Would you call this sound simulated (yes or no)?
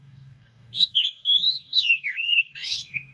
yes